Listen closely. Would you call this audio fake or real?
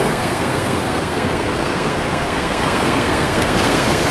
fake